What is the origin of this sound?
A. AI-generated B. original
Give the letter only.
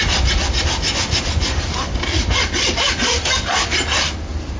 B